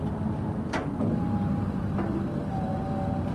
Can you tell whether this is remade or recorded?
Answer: recorded